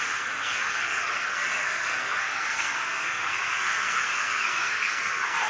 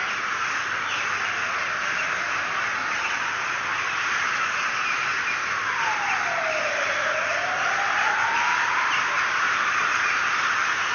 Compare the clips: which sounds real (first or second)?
second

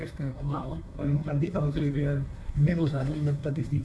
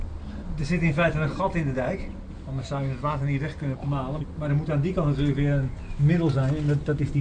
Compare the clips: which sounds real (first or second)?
second